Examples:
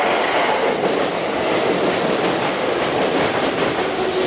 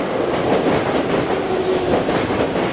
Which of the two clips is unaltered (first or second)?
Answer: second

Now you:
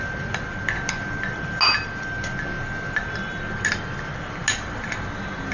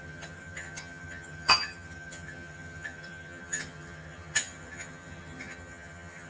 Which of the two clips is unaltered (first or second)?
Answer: first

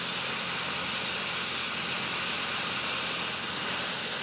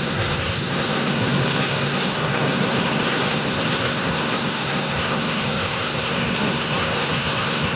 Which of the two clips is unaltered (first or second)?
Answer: first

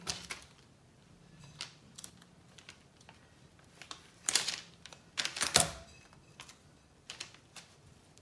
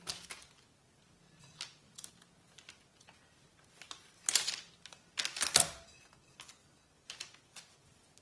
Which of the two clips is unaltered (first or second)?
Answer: second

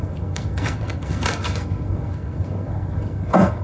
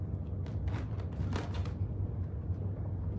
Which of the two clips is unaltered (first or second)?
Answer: second